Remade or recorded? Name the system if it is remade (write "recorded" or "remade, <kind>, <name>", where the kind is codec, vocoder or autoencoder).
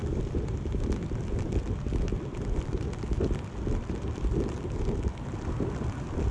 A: recorded